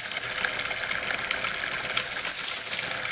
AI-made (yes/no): no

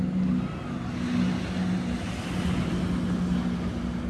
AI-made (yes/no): no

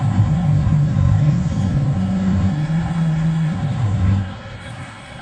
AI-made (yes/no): yes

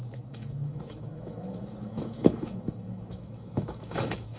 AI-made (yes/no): yes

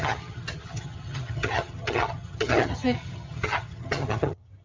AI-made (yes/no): yes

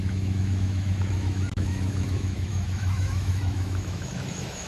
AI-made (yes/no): yes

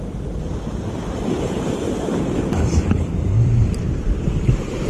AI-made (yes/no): yes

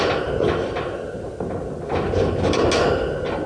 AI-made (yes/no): no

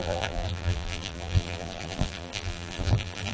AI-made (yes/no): yes